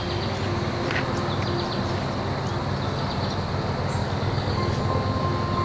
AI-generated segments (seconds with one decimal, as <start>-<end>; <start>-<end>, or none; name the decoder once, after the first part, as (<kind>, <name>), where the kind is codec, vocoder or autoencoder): 4.0-4.8 (codec, DAC)

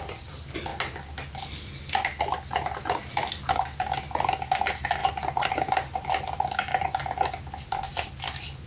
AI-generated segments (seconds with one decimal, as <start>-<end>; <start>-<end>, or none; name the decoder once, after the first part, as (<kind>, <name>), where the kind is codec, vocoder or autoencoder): none